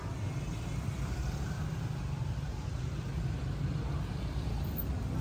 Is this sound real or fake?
real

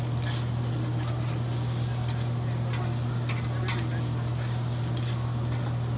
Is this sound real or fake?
real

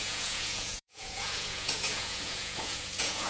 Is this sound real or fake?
fake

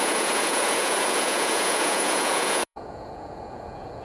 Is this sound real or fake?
fake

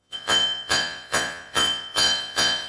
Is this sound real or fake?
fake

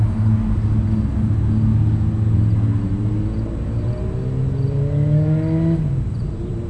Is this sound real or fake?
real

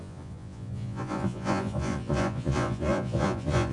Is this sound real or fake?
fake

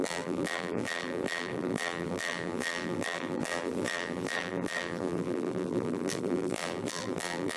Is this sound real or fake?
fake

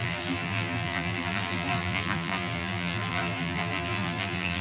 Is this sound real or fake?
fake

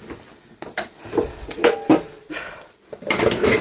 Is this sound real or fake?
real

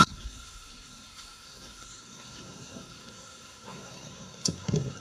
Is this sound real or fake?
fake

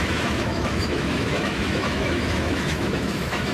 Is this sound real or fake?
fake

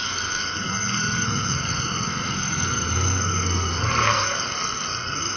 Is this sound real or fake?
fake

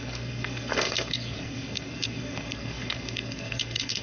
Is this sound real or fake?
fake